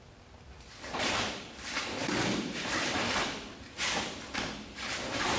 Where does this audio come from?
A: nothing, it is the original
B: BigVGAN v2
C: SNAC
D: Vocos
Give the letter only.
B